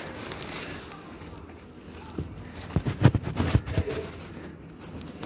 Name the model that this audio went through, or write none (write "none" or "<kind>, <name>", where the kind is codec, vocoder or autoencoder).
none